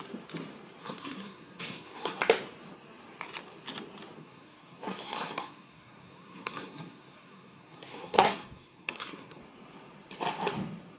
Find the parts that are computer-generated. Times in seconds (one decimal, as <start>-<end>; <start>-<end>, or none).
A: 0.8-2.2; 4.2-9.4